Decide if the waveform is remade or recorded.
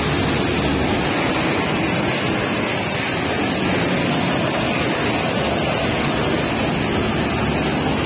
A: recorded